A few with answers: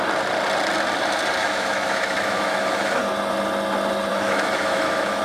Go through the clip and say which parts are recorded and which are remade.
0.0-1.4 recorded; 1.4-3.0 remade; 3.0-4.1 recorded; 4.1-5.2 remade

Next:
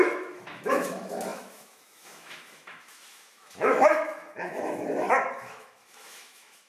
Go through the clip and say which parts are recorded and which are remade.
0.0-6.7 remade

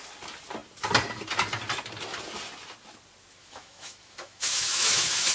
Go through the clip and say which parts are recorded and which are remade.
0.0-3.4 recorded; 3.4-5.3 remade

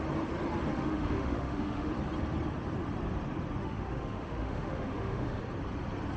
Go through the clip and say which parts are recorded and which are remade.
0.0-0.7 recorded; 0.7-1.9 remade; 1.9-3.6 recorded; 3.6-5.4 remade; 5.4-6.2 recorded

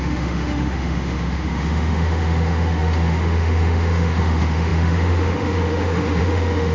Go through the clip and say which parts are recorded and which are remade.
0.0-6.7 remade

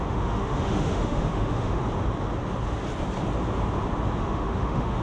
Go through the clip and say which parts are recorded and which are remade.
0.0-1.8 remade; 1.8-4.2 recorded; 4.2-5.0 remade

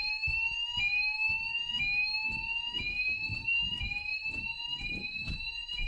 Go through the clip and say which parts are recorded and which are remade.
0.0-5.9 recorded